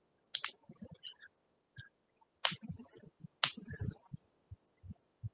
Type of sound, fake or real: real